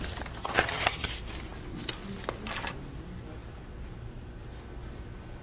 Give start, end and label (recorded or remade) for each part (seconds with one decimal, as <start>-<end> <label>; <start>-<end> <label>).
0.0-0.4 recorded; 0.4-1.1 remade; 1.1-5.4 recorded